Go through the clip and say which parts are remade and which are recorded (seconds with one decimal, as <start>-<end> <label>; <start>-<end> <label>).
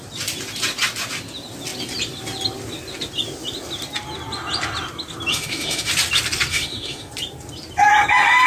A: 0.0-5.3 recorded; 5.3-5.9 remade; 5.9-6.5 recorded; 6.5-7.1 remade; 7.1-8.5 recorded